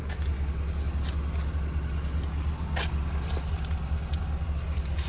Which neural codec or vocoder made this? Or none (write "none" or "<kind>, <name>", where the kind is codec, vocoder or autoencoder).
none